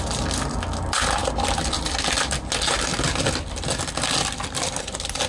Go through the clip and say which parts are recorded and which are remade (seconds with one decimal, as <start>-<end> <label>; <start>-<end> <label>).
0.0-5.3 recorded